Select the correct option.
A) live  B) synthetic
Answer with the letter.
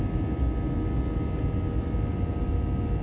A